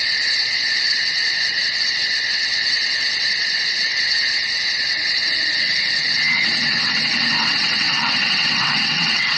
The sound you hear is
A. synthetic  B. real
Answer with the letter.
A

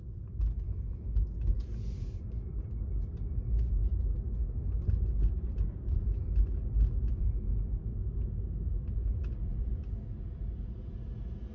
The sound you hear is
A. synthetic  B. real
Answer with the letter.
B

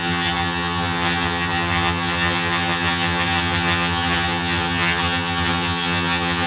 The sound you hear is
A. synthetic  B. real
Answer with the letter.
A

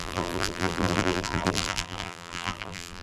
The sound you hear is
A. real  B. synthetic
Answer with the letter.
B